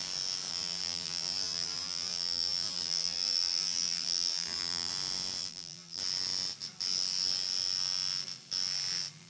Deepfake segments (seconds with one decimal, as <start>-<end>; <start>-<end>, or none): 0.5-4.9; 5.4-6.0